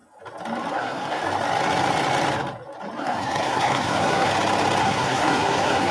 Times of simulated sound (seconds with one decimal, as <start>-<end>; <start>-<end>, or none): 0.7-1.2; 3.0-4.3; 4.8-5.9